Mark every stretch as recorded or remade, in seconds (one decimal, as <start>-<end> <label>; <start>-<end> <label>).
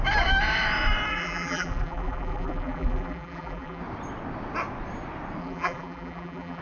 0.0-1.1 recorded; 1.1-3.8 remade; 3.8-5.4 recorded; 5.4-6.6 remade